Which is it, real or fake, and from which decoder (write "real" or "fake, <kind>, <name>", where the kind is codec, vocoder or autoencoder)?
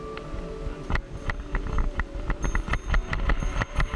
real